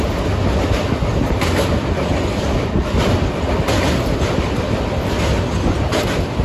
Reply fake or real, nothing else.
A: real